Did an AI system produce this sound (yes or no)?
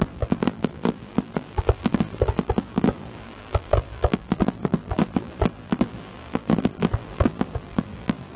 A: yes